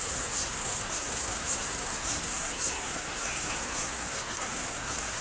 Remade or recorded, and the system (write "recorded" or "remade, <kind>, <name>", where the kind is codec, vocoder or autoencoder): remade, codec, SNAC